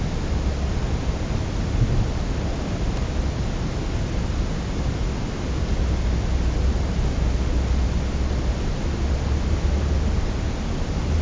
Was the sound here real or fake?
real